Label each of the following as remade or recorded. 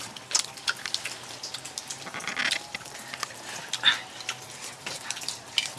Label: recorded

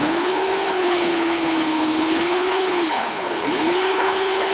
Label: remade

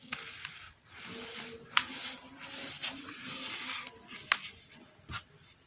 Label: recorded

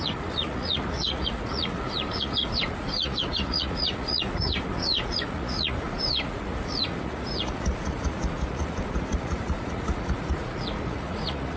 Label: remade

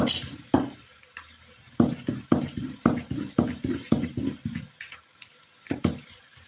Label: remade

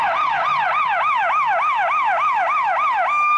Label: recorded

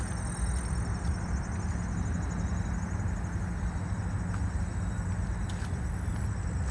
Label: recorded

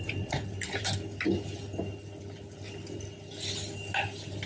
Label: recorded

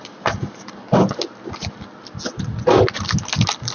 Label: recorded